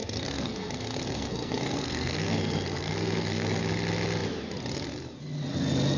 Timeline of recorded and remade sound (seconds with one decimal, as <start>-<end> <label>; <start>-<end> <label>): 0.0-3.6 remade; 3.6-6.0 recorded